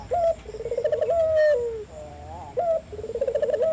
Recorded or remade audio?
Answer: recorded